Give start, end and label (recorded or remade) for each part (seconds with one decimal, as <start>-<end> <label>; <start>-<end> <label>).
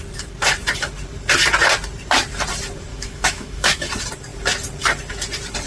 0.0-2.9 recorded; 2.9-3.9 remade; 3.9-5.7 recorded